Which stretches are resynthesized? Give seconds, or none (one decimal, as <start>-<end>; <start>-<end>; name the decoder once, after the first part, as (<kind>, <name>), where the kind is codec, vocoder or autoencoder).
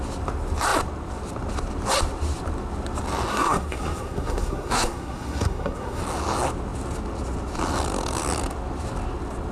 3.3-6.0 (codec, SNAC)